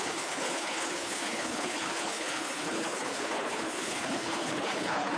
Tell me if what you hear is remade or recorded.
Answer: remade